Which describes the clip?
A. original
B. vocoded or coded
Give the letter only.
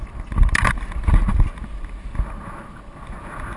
A